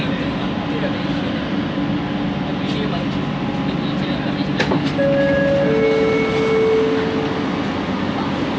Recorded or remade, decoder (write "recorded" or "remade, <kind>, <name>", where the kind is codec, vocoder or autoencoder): recorded